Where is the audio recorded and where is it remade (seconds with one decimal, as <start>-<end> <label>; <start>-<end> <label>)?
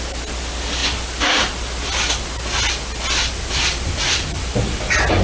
0.0-5.2 recorded